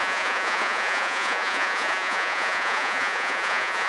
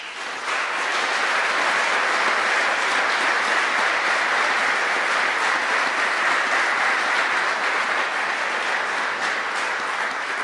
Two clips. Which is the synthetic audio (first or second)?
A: first